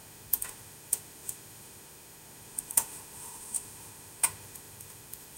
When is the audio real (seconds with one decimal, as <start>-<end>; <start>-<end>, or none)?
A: none